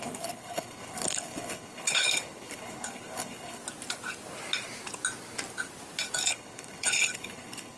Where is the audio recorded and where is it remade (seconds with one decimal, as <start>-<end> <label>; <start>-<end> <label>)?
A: 0.0-3.6 remade; 3.6-6.3 recorded; 6.3-7.8 remade